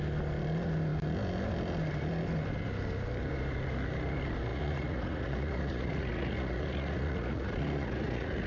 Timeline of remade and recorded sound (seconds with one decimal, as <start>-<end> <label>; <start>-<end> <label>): 0.0-4.5 recorded; 4.5-8.5 remade

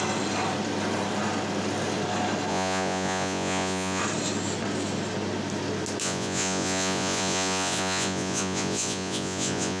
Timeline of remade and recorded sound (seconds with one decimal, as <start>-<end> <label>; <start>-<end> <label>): 0.0-2.5 recorded; 2.5-4.0 remade; 4.0-6.0 recorded; 6.0-9.8 remade

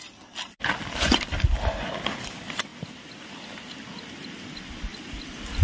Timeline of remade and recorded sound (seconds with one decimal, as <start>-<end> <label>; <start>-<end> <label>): 0.0-5.6 recorded

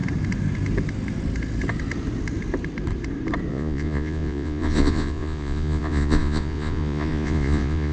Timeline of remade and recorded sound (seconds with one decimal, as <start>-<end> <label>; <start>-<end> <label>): 0.0-3.5 recorded; 3.5-7.9 remade

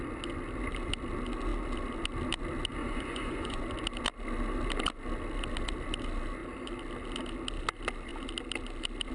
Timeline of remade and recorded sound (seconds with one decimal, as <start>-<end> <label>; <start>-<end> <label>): 0.0-2.8 recorded; 2.8-3.6 remade; 3.6-9.1 recorded

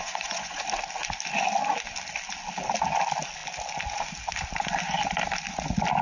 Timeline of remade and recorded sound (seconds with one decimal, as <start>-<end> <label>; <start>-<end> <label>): 0.0-0.6 remade; 0.6-6.0 recorded

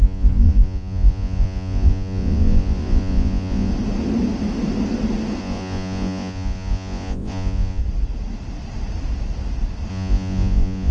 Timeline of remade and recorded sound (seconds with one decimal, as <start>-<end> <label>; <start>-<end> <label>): 0.0-3.7 remade; 3.7-5.4 recorded; 5.4-7.8 remade; 7.8-9.9 recorded; 9.9-10.9 remade

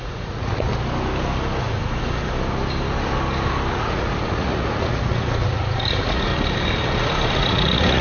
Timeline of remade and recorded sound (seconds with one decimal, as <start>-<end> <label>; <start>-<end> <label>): 0.0-0.7 remade; 0.7-3.7 recorded; 3.7-6.3 remade; 6.3-7.3 recorded; 7.3-8.0 remade